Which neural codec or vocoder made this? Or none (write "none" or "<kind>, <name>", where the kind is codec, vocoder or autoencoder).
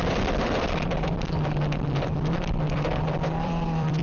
vocoder, BigVGAN v2